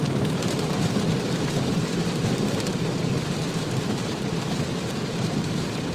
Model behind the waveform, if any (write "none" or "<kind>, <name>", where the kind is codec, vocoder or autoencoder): vocoder, BigVGAN v2